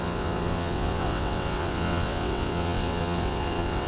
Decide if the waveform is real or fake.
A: fake